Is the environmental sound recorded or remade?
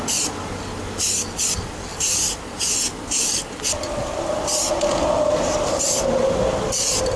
recorded